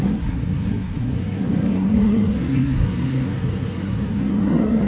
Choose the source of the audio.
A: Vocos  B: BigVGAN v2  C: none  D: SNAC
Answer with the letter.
D